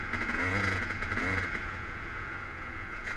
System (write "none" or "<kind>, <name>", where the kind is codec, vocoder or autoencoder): vocoder, Vocos